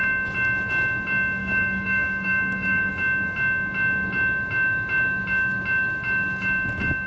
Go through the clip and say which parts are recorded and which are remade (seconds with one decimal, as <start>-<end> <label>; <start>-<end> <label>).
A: 0.0-1.4 recorded; 1.4-2.9 remade; 2.9-7.1 recorded